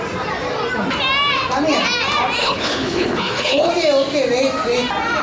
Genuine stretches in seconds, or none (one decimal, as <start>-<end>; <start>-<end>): 0.0-2.4; 3.7-5.2